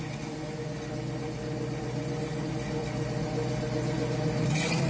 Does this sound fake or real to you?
real